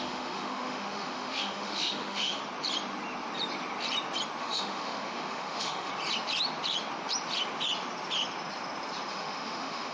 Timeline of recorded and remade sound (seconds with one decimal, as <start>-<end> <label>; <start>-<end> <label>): 0.0-2.4 remade; 2.4-4.4 recorded; 4.4-5.9 remade; 5.9-9.1 recorded; 9.1-9.9 remade